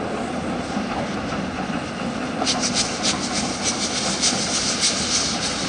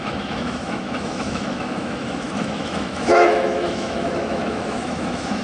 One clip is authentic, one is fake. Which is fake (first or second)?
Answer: second